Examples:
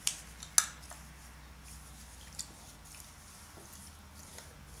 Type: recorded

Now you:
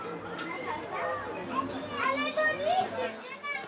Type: recorded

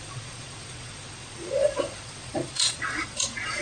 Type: remade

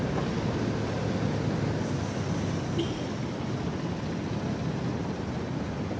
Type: recorded